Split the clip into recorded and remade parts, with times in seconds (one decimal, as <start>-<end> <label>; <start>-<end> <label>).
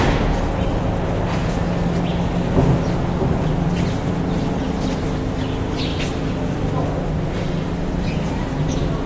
0.0-7.8 recorded; 7.8-8.7 remade; 8.7-9.1 recorded